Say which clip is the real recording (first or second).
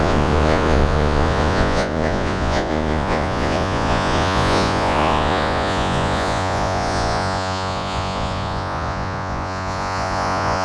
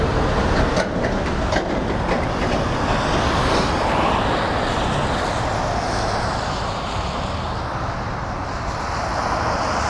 second